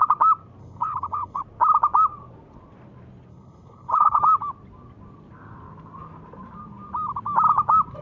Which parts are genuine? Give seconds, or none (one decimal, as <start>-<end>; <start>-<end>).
0.0-0.6; 1.4-3.3; 4.2-8.0